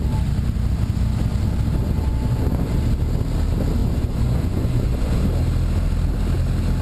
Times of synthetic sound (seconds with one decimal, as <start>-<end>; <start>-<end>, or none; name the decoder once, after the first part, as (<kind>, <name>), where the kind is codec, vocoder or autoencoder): 1.8-2.8 (vocoder, Vocos); 3.8-5.2